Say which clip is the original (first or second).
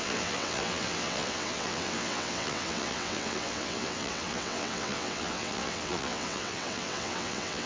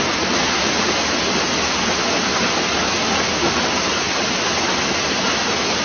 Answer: second